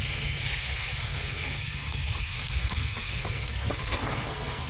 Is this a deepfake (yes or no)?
yes